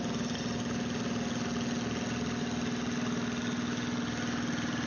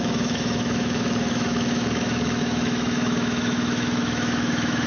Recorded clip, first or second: first